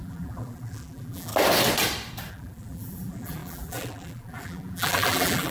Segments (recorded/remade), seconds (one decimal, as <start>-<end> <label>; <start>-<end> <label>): 0.0-1.3 remade; 1.3-2.3 recorded; 2.3-5.5 remade